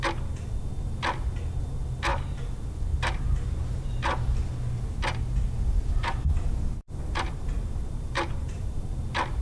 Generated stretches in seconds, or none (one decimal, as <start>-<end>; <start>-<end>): 6.0-9.0